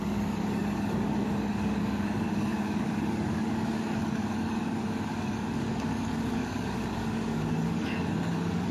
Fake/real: fake